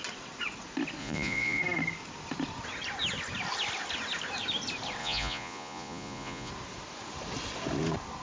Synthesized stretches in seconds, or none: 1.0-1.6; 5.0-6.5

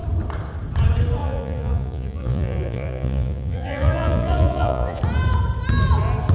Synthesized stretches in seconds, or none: 1.2-5.0

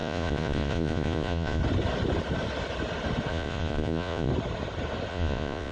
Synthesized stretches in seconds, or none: 0.0-1.6; 3.3-4.3; 5.1-5.7

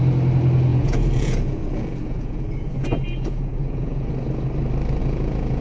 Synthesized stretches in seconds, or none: 0.7-4.1; 5.0-5.6